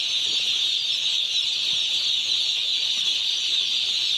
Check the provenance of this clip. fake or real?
real